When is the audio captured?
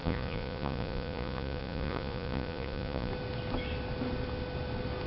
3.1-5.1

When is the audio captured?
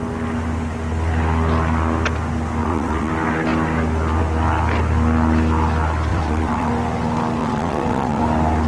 0.0-2.6; 3.1-6.1; 6.7-7.4; 8.2-8.7